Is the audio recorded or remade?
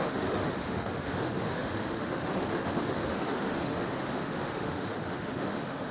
remade